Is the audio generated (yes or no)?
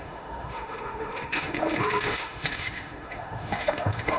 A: yes